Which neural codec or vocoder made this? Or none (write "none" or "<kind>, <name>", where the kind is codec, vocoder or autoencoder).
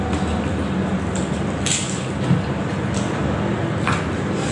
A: none